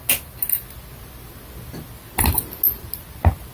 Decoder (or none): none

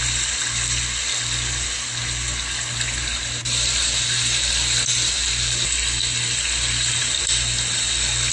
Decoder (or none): none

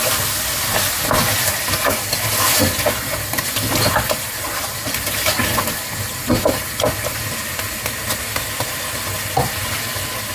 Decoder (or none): none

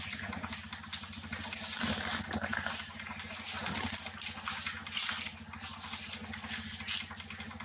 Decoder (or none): none